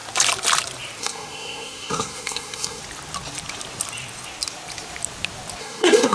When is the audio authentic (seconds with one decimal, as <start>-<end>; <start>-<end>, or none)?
0.0-1.0; 2.8-5.6